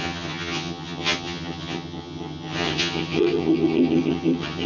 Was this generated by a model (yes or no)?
yes